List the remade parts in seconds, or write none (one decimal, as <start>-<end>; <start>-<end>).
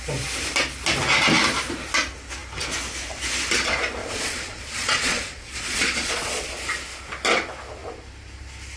4.0-6.4